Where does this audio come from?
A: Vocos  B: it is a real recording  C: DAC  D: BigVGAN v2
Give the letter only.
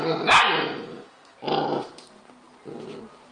B